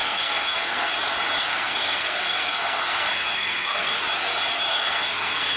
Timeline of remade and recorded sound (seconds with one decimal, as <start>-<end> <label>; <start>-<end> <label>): 0.0-0.9 remade; 0.9-1.4 recorded; 1.4-4.0 remade; 4.0-4.7 recorded; 4.7-5.6 remade